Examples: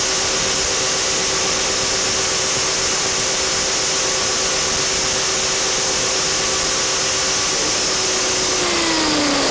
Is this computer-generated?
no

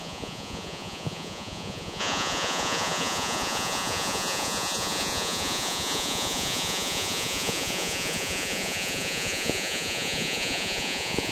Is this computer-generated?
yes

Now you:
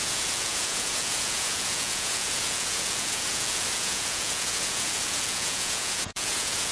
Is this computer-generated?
yes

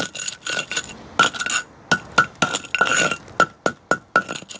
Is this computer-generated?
no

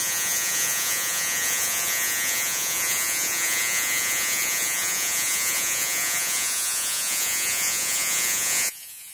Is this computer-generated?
yes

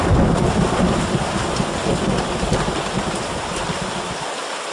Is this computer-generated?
no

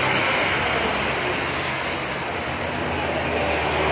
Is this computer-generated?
no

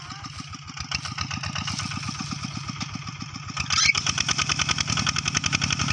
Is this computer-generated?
no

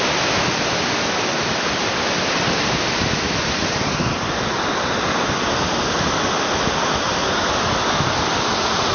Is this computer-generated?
no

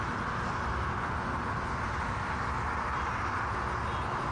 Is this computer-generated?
no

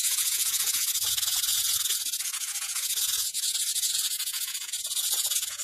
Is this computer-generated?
yes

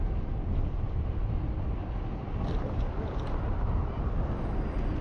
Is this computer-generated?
no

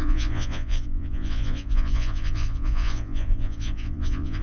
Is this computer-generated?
yes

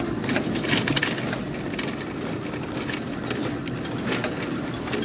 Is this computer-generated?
no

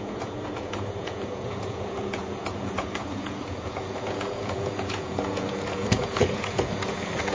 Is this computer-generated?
yes